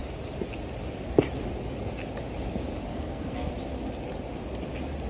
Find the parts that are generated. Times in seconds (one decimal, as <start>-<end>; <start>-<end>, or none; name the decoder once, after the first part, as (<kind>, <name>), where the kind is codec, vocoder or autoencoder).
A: 2.9-3.5 (codec, SNAC)